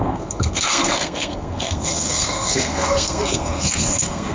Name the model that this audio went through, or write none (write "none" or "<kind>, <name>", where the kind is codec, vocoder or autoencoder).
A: codec, SNAC